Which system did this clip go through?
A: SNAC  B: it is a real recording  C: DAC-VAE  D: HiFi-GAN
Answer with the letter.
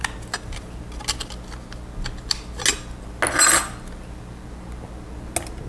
B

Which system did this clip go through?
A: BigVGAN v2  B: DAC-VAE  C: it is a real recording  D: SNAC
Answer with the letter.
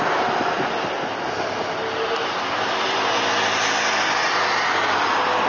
C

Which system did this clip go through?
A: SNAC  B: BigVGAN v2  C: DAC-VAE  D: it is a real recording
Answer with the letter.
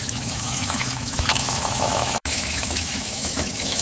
C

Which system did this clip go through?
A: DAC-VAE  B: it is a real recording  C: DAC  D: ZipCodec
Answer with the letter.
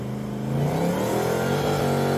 B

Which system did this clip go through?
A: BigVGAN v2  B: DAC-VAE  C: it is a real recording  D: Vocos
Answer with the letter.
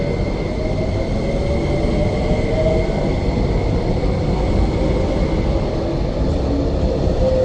C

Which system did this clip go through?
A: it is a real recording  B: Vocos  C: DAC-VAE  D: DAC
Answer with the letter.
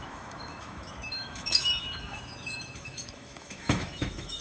C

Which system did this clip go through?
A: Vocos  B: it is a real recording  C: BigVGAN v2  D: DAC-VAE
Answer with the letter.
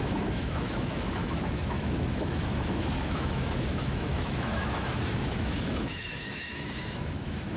D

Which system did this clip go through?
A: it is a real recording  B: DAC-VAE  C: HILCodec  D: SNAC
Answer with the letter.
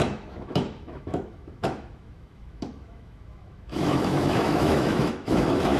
B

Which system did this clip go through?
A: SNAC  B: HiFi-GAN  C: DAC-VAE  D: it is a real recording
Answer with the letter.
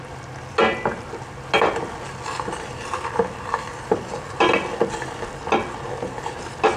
D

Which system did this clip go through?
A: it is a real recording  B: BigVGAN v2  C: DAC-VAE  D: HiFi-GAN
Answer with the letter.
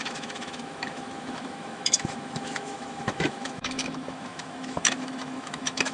C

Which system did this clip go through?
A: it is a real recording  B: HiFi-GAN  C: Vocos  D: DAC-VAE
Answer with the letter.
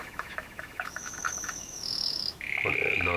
D